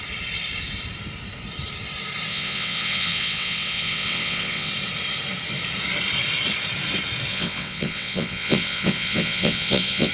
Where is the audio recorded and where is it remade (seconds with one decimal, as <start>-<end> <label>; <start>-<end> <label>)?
0.0-2.3 recorded; 2.3-4.7 remade; 4.7-7.3 recorded; 7.3-10.1 remade